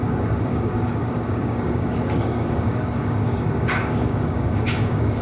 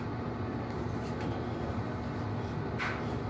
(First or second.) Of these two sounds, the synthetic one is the first